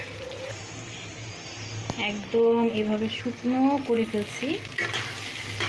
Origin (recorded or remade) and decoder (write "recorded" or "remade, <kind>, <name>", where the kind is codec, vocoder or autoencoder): recorded